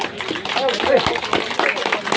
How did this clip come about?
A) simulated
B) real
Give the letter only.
B